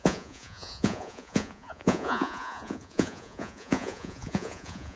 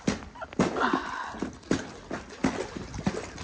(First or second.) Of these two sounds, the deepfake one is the first